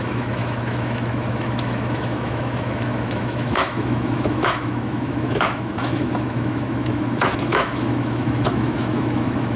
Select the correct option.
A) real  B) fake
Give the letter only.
B